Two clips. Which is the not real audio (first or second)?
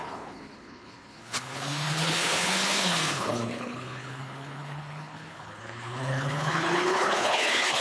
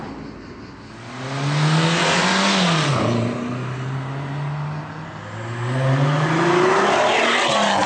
first